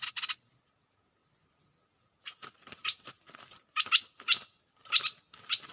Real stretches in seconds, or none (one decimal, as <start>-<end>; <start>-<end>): 0.0-5.7